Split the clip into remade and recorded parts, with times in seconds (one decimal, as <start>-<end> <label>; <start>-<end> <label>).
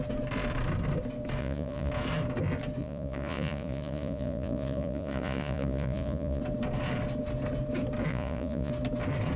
0.0-1.4 recorded; 1.4-1.9 remade; 1.9-2.8 recorded; 2.8-6.4 remade; 6.4-8.1 recorded; 8.1-8.7 remade; 8.7-9.4 recorded